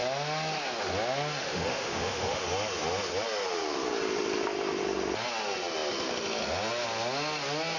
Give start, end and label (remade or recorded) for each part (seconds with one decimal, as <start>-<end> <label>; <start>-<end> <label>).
0.0-1.4 recorded; 1.4-2.4 remade; 2.4-7.8 recorded